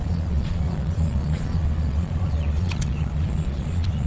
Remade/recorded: remade